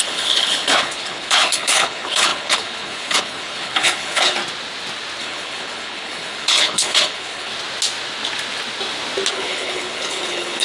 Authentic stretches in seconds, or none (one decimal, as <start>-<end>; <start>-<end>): 4.4-5.2; 7.5-9.3